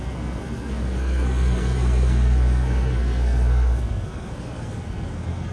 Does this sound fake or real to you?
fake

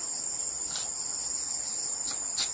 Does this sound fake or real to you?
real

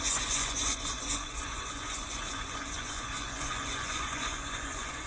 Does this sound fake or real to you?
fake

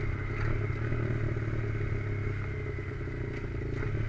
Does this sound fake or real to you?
real